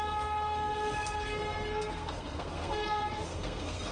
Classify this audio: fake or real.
fake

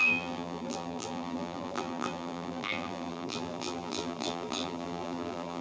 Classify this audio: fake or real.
fake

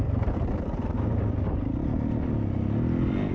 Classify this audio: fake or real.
real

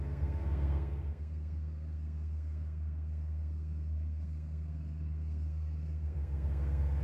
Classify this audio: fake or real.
fake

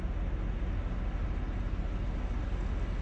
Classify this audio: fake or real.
real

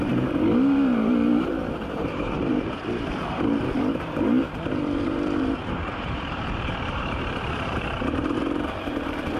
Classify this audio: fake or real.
fake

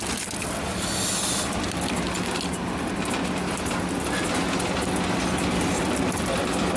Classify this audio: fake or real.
real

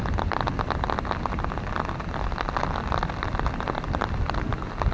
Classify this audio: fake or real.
real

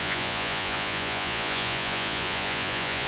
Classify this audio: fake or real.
fake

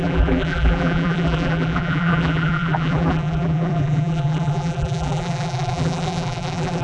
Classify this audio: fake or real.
fake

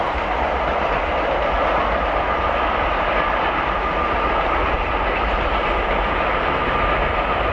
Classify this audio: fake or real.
real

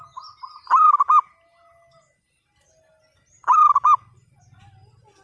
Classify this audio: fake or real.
real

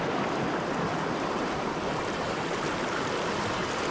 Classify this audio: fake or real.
real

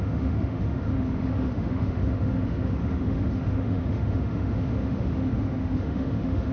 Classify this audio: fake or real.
fake